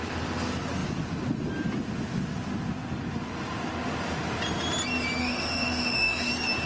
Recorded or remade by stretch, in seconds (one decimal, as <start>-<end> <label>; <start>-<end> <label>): 0.0-5.2 recorded; 5.2-6.3 remade; 6.3-6.7 recorded